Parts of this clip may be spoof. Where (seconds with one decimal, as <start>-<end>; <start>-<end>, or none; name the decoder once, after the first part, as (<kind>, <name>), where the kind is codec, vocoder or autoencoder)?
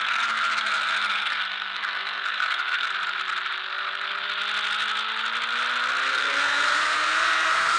0.0-2.9 (codec, SNAC); 6.1-7.8